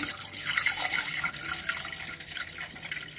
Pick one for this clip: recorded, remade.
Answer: recorded